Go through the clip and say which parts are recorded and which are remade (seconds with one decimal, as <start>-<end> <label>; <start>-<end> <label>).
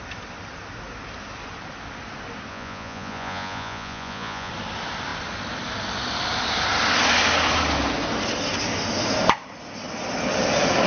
0.0-2.5 recorded; 2.5-4.5 remade; 4.5-10.9 recorded